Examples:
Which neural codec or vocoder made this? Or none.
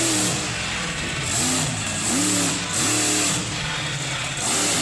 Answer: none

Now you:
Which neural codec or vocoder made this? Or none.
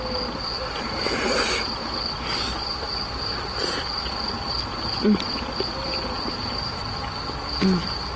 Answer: none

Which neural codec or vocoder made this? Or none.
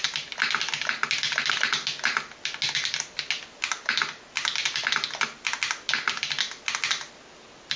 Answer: none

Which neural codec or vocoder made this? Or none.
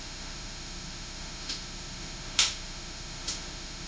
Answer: autoencoder, DAC-VAE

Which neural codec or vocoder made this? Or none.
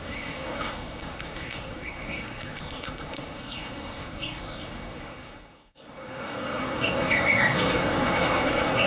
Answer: codec, SNAC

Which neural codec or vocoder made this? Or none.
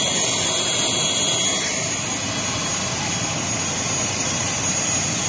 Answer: none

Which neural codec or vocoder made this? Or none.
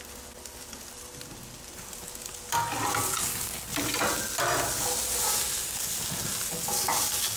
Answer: none